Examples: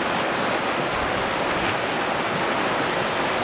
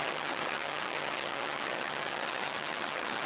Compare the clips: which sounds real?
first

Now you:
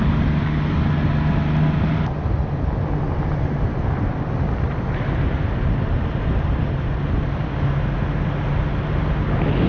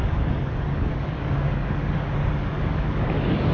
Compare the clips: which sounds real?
first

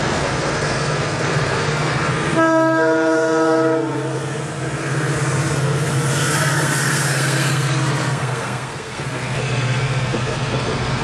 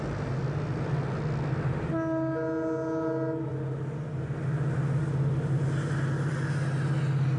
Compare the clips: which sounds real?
second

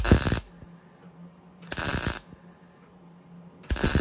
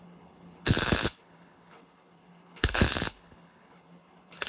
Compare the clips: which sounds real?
first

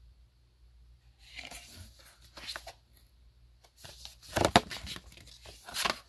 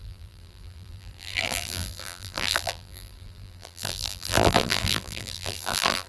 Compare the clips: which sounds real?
first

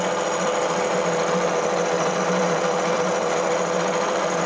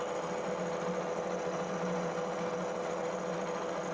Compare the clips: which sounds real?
second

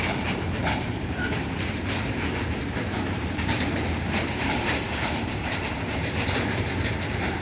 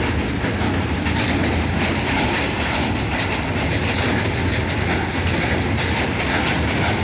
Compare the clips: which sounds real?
second